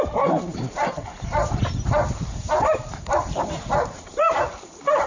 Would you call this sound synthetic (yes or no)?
yes